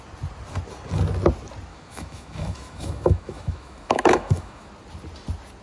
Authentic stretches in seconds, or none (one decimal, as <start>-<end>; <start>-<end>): 0.0-1.7; 4.7-5.6